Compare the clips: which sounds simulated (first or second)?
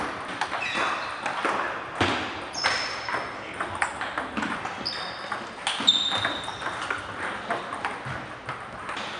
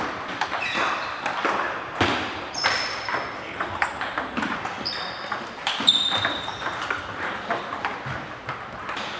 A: second